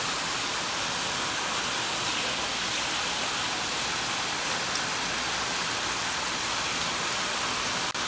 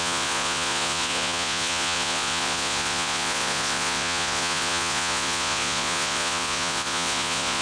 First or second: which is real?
first